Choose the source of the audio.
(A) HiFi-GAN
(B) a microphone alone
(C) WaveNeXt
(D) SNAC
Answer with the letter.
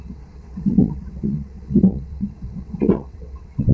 C